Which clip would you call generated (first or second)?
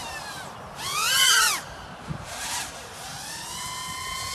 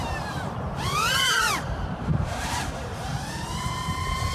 second